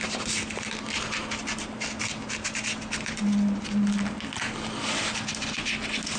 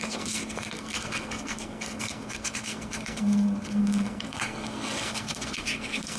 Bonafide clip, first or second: first